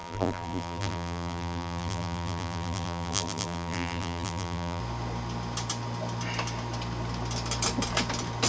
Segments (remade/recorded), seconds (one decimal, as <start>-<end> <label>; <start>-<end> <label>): 0.0-4.8 remade; 4.8-8.5 recorded